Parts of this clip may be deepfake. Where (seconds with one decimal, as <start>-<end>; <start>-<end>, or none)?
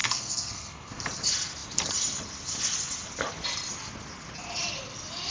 0.0-1.0